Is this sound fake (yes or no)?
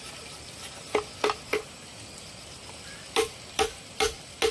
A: no